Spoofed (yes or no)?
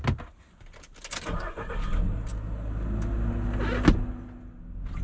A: no